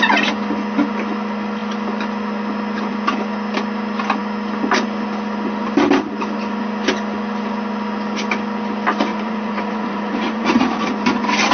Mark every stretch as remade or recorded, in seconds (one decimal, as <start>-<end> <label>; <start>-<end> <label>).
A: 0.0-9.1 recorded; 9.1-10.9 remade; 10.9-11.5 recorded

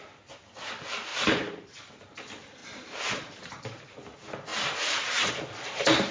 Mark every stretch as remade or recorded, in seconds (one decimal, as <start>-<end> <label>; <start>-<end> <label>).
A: 0.0-1.1 recorded; 1.1-1.8 remade; 1.8-2.6 recorded; 2.6-3.8 remade; 3.8-4.5 recorded; 4.5-5.3 remade; 5.3-6.1 recorded

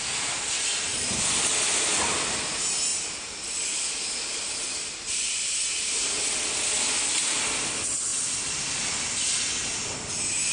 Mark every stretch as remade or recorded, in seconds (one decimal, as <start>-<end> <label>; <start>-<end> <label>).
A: 0.0-10.5 recorded